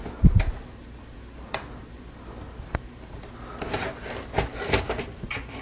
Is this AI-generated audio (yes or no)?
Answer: no